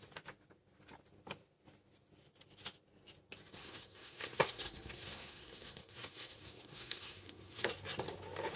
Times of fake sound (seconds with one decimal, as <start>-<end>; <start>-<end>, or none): 3.6-7.7

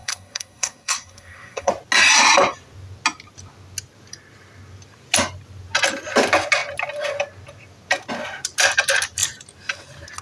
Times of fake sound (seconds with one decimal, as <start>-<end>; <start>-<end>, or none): 0.0-1.7

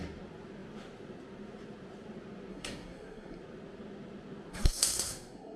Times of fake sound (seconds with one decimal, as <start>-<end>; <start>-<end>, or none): 2.5-3.4; 4.5-5.6

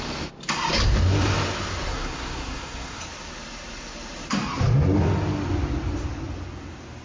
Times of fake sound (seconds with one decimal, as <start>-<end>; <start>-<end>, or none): 1.9-3.0